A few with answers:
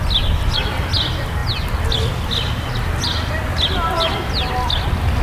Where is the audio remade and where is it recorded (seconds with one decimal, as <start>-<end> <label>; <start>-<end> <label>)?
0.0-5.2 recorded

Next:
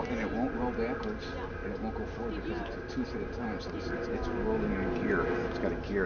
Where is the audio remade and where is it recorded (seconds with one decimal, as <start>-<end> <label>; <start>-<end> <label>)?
0.0-6.1 recorded

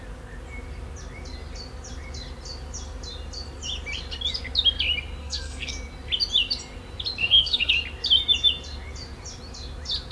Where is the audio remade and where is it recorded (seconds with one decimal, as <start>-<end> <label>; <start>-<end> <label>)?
0.0-5.2 recorded; 5.2-5.7 remade; 5.7-7.2 recorded; 7.2-7.7 remade; 7.7-10.1 recorded